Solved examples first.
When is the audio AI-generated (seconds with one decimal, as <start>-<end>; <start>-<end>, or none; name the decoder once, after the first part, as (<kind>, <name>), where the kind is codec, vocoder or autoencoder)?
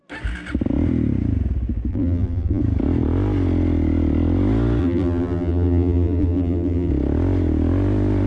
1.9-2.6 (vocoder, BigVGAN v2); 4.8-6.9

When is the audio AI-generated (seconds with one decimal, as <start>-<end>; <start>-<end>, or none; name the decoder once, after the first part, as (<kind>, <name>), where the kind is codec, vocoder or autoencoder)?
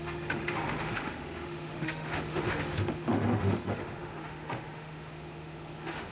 0.0-6.1 (autoencoder, DAC-VAE)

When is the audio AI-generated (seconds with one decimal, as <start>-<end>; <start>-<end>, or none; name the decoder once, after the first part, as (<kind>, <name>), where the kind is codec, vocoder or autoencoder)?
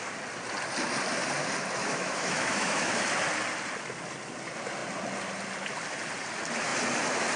1.8-2.9 (autoencoder, DAC-VAE)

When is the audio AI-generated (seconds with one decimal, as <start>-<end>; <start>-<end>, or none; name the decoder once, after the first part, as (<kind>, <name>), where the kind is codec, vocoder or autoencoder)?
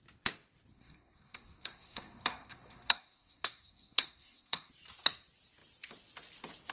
0.7-4.7 (codec, SNAC)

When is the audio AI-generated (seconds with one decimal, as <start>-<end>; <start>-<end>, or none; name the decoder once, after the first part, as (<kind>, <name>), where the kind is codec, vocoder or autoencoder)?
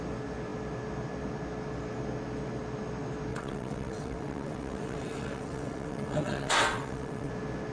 3.3-7.3 (vocoder, WaveNeXt)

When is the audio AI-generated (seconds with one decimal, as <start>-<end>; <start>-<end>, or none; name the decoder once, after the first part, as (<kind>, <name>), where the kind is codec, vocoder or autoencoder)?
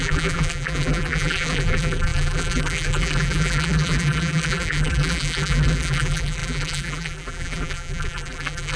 0.0-8.8 (vocoder, BigVGAN v2)